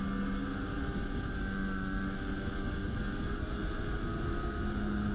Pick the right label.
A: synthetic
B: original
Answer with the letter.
B